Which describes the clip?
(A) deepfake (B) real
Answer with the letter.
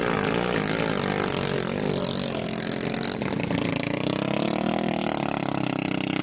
B